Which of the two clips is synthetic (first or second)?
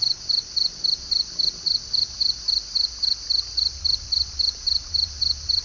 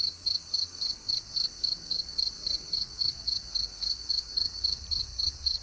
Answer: second